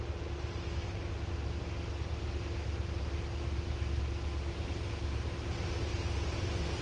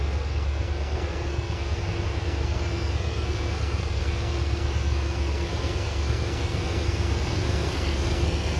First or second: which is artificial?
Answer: second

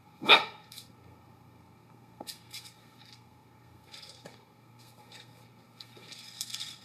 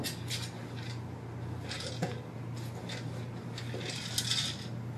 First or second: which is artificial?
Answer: first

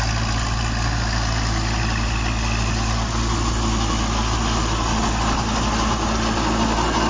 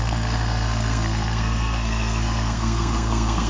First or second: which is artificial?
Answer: second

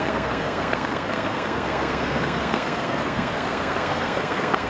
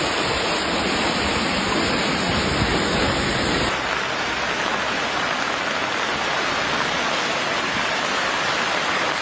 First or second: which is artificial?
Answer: first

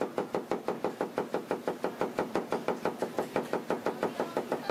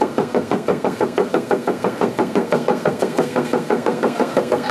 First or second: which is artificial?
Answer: second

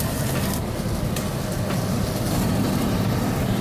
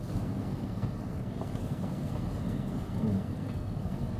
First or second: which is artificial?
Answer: second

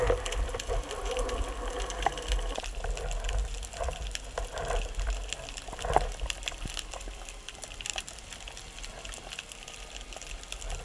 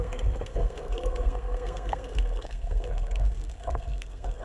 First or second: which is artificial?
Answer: second